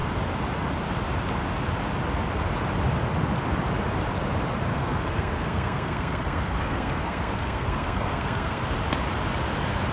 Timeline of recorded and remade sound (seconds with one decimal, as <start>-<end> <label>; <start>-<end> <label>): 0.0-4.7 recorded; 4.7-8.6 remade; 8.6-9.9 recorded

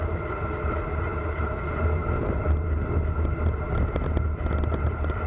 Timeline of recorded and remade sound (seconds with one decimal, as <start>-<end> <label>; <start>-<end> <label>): 0.0-5.3 recorded

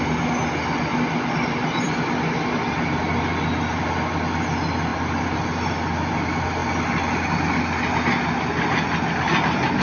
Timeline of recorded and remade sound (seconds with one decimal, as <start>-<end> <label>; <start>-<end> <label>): 0.0-9.8 recorded

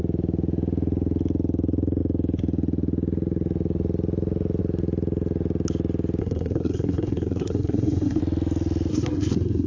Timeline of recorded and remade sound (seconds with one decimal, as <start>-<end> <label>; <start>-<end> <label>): 0.0-6.2 recorded; 6.2-8.2 remade; 8.2-8.9 recorded; 8.9-9.7 remade